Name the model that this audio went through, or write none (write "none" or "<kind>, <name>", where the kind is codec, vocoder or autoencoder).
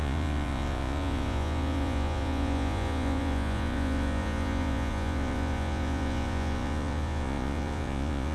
vocoder, Vocos